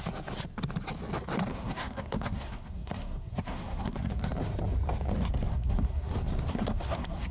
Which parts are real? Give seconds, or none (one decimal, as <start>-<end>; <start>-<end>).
0.0-1.5; 4.2-5.5; 6.1-6.5